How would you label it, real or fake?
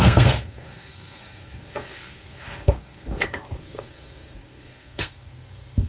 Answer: fake